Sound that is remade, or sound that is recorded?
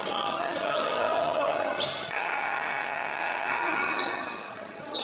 remade